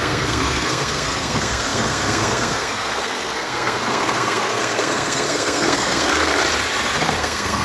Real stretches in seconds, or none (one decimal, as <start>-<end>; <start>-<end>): 6.4-7.0